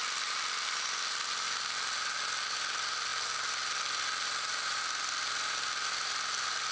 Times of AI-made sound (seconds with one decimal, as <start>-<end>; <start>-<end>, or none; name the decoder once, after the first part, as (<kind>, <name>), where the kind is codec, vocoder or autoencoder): none